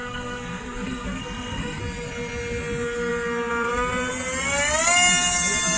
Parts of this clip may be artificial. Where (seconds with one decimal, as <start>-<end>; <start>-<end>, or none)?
0.0-1.8